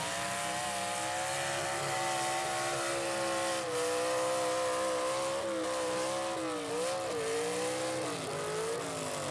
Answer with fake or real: real